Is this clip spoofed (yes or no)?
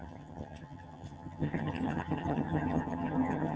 yes